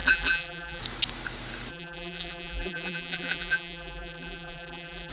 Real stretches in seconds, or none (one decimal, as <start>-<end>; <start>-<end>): 0.8-1.7